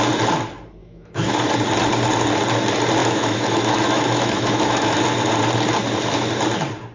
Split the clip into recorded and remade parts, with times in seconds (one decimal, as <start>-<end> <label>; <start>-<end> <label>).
0.0-0.8 recorded; 0.8-1.3 remade; 1.3-3.0 recorded; 3.0-5.0 remade; 5.0-6.9 recorded